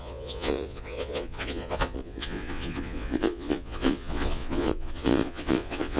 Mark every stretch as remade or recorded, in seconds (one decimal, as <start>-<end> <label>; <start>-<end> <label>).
0.0-6.0 remade

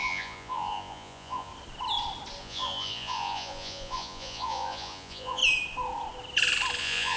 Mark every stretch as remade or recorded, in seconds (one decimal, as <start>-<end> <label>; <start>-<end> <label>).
0.0-1.5 remade; 1.5-2.4 recorded; 2.4-5.4 remade; 5.4-6.8 recorded; 6.8-7.2 remade

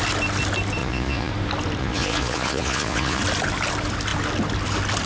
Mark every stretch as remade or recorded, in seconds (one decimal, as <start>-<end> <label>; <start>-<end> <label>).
0.0-0.8 recorded; 0.8-1.3 remade; 1.3-1.8 recorded; 1.8-3.2 remade; 3.2-5.1 recorded

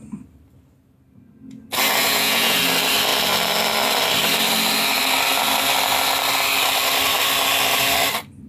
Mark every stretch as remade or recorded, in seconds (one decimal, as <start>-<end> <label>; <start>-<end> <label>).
0.0-2.0 recorded; 2.0-2.6 remade; 2.6-8.5 recorded

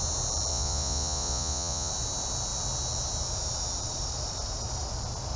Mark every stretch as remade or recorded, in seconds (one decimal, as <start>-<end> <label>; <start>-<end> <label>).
0.0-0.5 recorded; 0.5-1.9 remade; 1.9-5.4 recorded

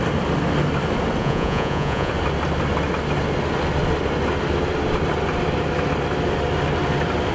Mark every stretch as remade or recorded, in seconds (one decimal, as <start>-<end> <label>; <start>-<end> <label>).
0.0-1.2 recorded; 1.2-2.1 remade; 2.1-7.3 recorded

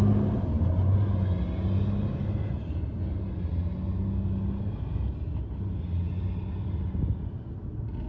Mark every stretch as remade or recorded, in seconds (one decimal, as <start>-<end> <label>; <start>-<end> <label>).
0.0-8.1 recorded

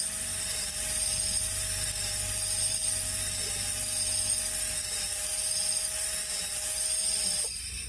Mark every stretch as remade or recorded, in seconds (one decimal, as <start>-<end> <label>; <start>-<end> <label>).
0.0-7.9 recorded